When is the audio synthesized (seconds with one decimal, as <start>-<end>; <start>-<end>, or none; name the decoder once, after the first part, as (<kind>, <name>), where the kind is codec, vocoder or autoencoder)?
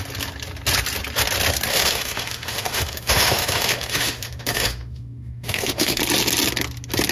1.7-6.0 (autoencoder, DAC-VAE)